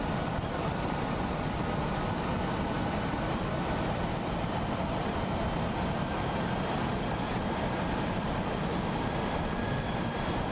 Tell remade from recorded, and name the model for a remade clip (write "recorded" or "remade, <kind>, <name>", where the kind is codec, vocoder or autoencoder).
remade, vocoder, BigVGAN v2